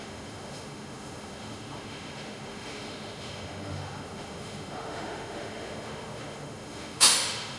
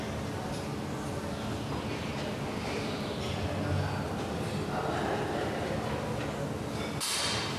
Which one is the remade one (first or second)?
first